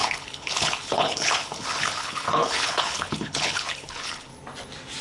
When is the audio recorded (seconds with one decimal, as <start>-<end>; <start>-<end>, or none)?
4.3-5.0